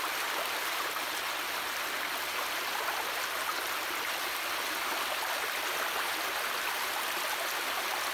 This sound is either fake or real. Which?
real